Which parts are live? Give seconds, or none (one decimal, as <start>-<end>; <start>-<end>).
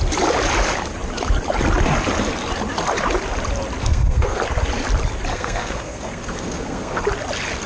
0.0-3.8; 4.4-5.3; 7.0-7.7